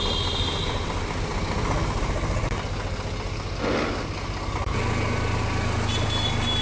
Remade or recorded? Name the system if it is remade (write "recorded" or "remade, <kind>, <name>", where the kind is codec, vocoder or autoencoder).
recorded